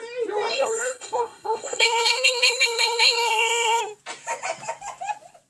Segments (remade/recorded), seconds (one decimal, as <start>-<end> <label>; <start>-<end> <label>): 0.0-0.5 recorded; 0.5-3.8 remade; 3.8-5.5 recorded